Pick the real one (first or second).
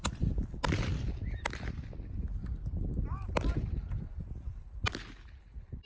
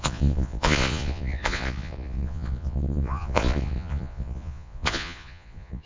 first